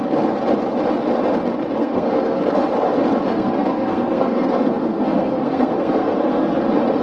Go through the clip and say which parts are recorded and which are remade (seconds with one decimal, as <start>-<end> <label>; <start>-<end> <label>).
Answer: 0.0-1.8 recorded; 1.8-2.4 remade; 2.4-3.3 recorded; 3.3-6.6 remade; 6.6-7.0 recorded